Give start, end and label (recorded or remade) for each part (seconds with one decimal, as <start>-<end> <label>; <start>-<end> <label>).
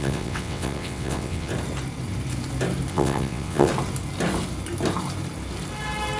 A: 0.0-1.5 remade; 1.5-2.9 recorded; 2.9-3.7 remade; 3.7-6.2 recorded